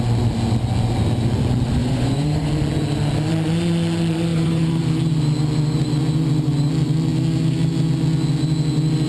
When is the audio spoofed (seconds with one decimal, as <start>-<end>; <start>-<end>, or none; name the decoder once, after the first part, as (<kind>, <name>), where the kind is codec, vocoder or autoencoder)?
1.8-2.5 (vocoder, Vocos); 4.3-4.8